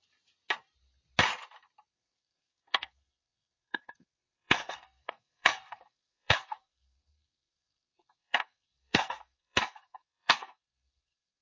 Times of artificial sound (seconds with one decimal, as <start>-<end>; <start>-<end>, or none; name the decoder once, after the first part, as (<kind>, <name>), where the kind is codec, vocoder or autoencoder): 1.9-11.4 (codec, SNAC)